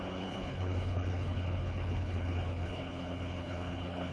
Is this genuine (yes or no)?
no